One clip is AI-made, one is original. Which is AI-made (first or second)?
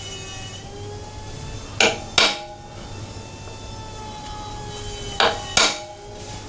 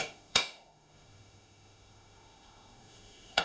second